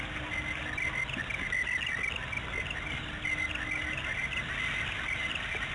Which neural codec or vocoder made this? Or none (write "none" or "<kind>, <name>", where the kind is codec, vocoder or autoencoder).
none